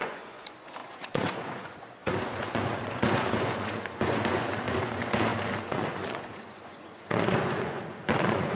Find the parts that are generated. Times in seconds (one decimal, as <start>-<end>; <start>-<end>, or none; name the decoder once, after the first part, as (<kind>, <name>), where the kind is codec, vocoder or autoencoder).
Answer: 0.0-8.5 (vocoder, Vocos)